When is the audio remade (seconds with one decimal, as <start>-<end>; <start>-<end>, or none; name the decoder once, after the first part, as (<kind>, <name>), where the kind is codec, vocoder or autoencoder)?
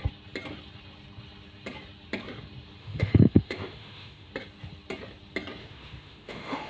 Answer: 2.8-4.3 (autoencoder, DAC-VAE); 5.6-6.7